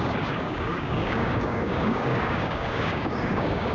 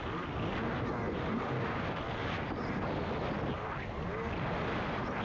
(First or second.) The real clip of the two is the second